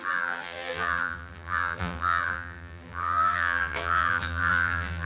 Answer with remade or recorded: remade